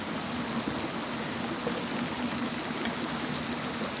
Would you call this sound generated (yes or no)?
no